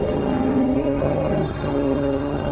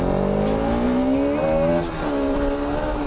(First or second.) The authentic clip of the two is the second